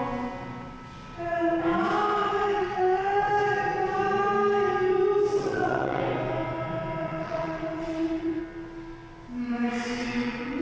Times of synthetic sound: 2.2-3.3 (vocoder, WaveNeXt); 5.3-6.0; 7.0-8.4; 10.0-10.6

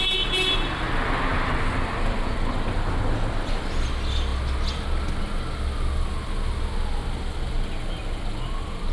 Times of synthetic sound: none

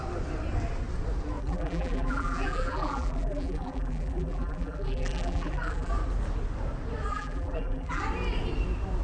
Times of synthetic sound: 1.4-5.9 (vocoder, BigVGAN v2); 7.1-8.0

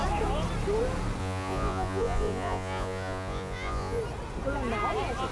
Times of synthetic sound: 1.2-4.0 (vocoder, Vocos)

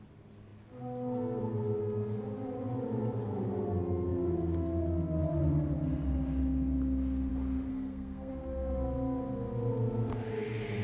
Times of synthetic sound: 7.7-8.3 (codec, SNAC)

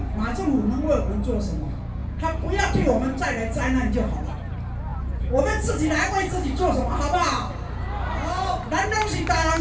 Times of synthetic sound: 2.0-2.9 (vocoder, Vocos); 4.9-5.7

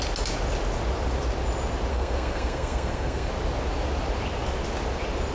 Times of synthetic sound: 1.9-3.3 (codec, SNAC)

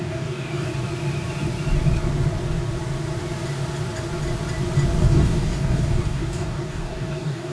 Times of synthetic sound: 0.0-0.7 (codec, DAC); 5.0-7.5